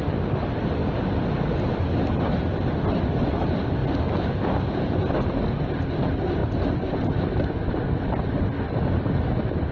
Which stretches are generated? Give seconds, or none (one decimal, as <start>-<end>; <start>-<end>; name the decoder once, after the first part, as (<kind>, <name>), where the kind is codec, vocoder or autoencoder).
0.0-0.8 (vocoder, BigVGAN v2); 2.9-3.8; 4.5-6.4; 8.3-9.7